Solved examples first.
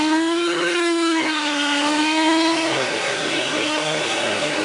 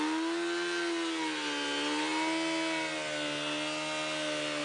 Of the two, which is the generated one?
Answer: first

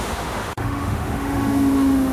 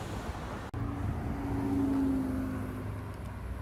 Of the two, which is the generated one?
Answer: first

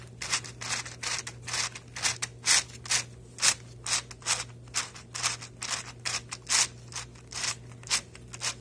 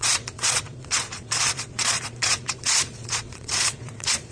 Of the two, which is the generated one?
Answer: second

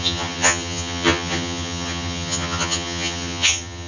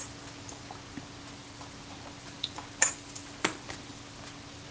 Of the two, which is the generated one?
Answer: first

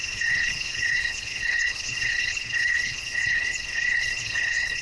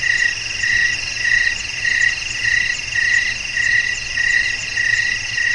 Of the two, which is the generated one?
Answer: first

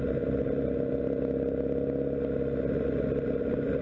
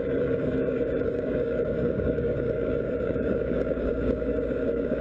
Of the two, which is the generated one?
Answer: second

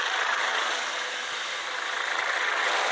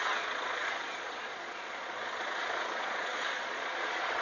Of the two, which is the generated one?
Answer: second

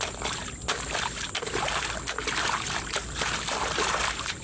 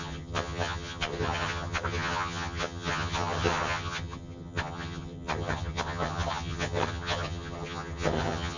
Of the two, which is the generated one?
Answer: second